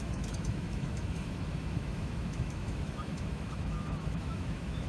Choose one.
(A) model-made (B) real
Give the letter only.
A